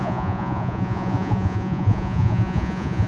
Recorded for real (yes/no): no